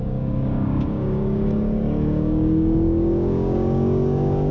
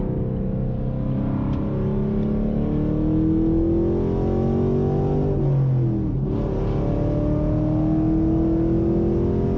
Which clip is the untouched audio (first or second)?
second